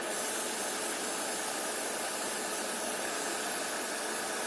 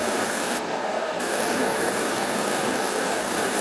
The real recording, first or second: first